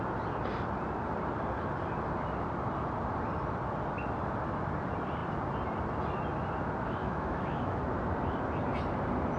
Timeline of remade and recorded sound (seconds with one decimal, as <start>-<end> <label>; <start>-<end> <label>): 0.0-7.0 recorded; 7.0-7.8 remade; 7.8-9.4 recorded